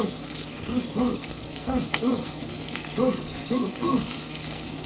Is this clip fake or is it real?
fake